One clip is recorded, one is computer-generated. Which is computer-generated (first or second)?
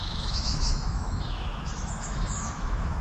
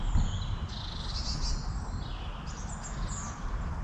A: first